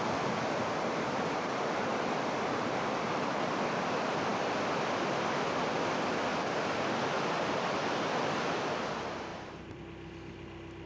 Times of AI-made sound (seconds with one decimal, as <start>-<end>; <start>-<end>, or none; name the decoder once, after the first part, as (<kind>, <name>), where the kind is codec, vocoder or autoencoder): 0.6-3.4 (vocoder, BigVGAN v2); 9.3-9.8

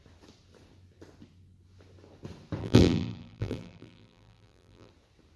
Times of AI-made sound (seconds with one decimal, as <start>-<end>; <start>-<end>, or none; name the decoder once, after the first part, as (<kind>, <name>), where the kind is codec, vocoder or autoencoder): 2.6-4.9 (vocoder, BigVGAN v2)

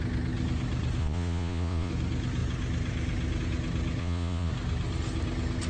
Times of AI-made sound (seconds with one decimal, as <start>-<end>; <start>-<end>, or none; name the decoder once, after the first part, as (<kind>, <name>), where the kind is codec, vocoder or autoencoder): 1.0-1.9 (vocoder, Vocos); 4.0-4.5

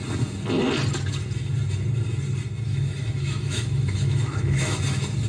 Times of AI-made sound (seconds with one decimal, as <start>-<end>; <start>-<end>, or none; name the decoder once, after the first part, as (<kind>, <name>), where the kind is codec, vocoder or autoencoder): 2.7-4.8 (autoencoder, DAC-VAE)

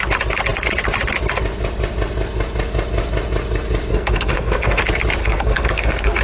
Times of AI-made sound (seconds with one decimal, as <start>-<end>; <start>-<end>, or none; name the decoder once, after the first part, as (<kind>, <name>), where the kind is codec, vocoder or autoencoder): 3.9-4.8 (codec, SNAC); 5.2-6.2

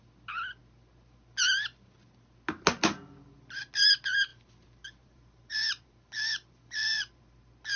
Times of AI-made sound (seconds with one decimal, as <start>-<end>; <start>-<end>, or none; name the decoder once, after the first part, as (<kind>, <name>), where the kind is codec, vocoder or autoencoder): 4.3-7.2 (vocoder, BigVGAN v2)

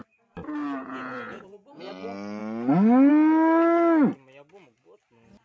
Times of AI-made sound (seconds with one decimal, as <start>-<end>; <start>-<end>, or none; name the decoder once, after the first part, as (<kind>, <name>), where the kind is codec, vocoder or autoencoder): 0.9-1.9 (vocoder, Vocos)

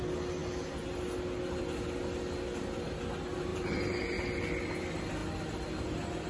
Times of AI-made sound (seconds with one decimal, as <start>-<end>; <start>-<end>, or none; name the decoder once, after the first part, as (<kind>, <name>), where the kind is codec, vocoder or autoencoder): 3.5-4.2 (vocoder, BigVGAN v2)